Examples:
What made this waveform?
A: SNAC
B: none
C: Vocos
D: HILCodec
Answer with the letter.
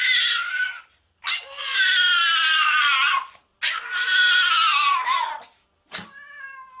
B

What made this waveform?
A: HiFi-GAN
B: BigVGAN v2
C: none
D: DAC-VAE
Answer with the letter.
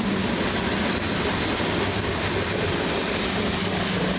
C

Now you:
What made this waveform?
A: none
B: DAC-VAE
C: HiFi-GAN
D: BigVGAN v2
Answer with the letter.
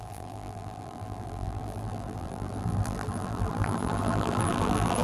D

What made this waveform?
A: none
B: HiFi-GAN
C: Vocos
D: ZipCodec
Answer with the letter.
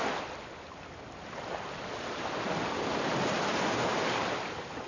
A